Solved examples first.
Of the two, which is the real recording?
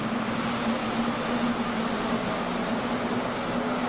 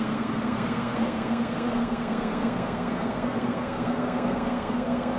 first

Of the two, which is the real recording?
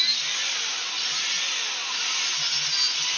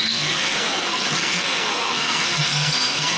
first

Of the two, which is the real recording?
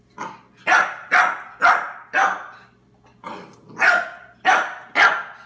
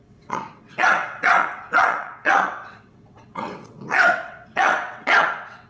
first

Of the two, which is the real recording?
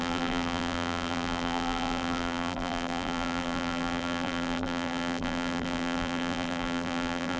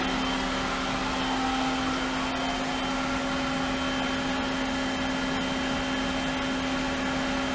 second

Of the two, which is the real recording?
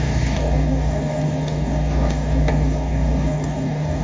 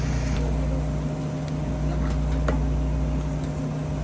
second